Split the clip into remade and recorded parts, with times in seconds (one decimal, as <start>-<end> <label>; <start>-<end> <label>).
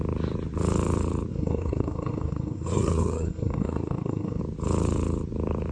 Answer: 0.0-1.3 recorded; 1.3-4.4 remade; 4.4-5.7 recorded